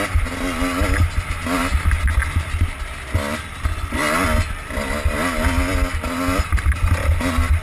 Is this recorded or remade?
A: recorded